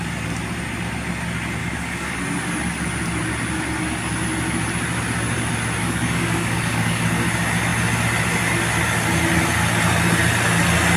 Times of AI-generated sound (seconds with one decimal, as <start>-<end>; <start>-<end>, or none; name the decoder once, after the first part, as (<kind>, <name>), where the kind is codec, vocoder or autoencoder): 1.6-2.2 (codec, DAC); 5.8-7.0